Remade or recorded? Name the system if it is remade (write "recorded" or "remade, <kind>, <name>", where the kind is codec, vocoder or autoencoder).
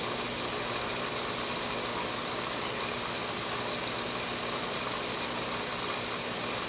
recorded